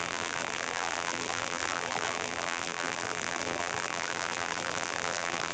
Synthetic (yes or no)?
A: yes